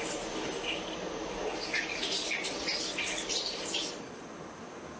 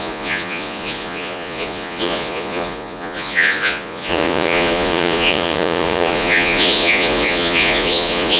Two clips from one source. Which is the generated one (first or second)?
second